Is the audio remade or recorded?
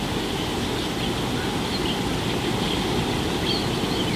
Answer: recorded